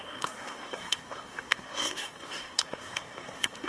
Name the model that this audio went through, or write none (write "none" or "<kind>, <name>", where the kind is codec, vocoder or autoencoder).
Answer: codec, SNAC